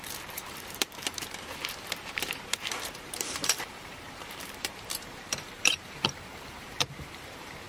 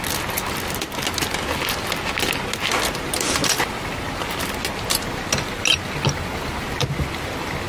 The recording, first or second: second